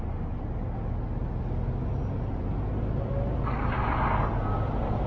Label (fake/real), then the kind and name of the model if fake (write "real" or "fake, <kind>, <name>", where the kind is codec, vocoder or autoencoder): real